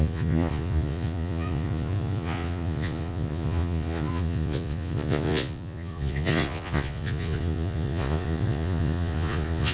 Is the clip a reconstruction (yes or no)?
yes